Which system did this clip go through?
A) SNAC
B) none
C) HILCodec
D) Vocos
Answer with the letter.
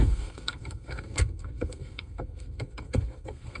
A